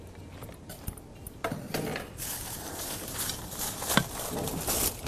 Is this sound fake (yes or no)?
no